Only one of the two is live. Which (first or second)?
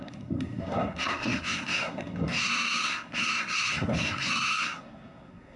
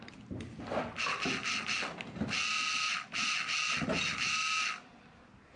second